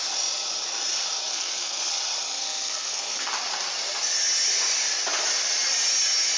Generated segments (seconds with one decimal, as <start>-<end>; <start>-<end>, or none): 1.3-1.9; 2.4-3.3